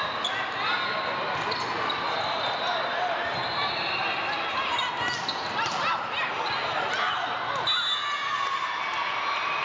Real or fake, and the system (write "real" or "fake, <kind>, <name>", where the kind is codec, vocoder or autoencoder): real